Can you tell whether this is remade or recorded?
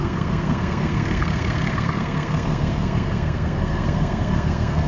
remade